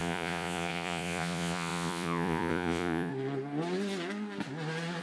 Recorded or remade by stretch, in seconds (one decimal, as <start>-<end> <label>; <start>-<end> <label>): 0.0-3.1 remade; 3.1-5.0 recorded